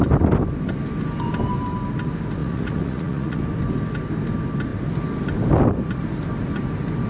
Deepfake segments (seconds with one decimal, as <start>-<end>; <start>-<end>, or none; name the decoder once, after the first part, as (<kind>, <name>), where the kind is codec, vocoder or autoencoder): 2.4-3.4 (vocoder, Vocos)